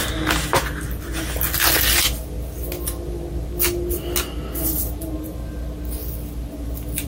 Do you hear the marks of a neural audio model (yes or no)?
no